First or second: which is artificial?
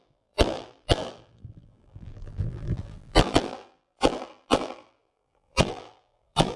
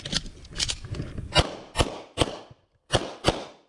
first